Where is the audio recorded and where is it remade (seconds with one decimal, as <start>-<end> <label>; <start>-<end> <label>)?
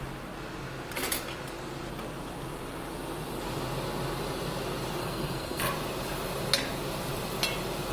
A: 0.0-5.0 recorded; 5.0-5.6 remade; 5.6-7.9 recorded